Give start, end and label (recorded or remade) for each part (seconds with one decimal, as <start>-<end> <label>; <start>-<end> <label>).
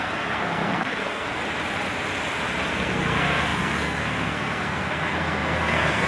0.0-1.4 remade; 1.4-2.7 recorded; 2.7-6.1 remade